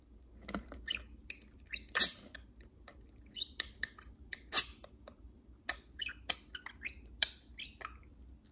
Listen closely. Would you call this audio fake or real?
real